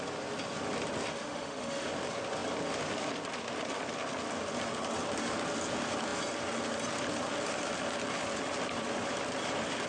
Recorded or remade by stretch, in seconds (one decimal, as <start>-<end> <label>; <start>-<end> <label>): 0.0-1.1 recorded; 1.1-1.9 remade; 1.9-9.9 recorded